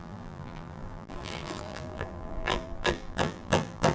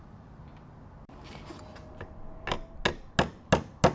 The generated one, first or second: first